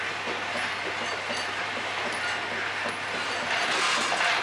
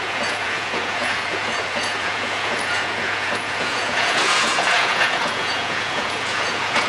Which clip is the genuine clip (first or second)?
first